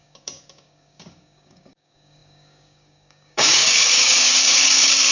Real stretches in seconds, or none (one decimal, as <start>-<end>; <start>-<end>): none